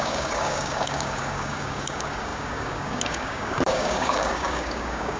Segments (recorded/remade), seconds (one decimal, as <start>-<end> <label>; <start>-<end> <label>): 0.0-5.2 remade